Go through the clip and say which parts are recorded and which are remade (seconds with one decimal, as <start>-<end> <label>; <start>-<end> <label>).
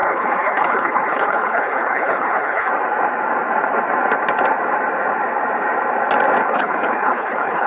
0.0-2.7 remade; 2.7-6.5 recorded; 6.5-7.7 remade